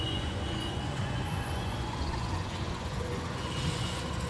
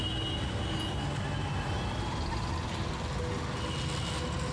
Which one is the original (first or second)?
second